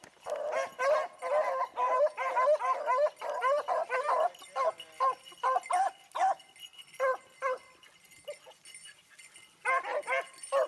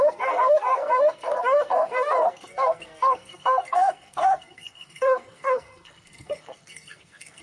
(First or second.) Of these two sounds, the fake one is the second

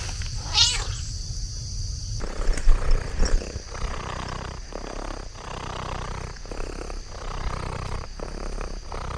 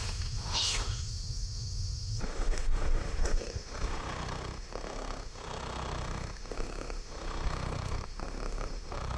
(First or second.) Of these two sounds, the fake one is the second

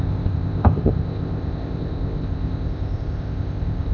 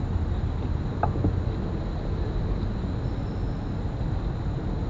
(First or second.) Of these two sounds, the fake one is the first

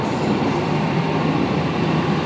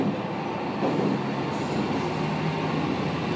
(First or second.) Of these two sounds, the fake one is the first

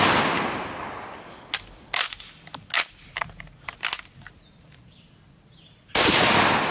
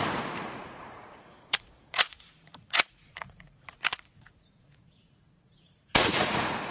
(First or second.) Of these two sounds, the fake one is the second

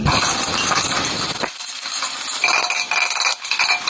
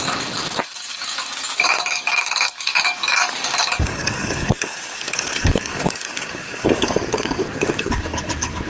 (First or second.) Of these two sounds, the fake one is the second